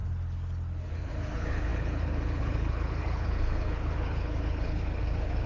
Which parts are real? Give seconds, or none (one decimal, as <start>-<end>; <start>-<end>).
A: 0.0-0.9